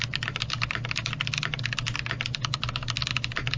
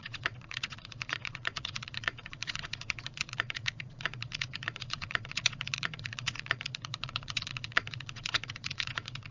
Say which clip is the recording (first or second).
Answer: first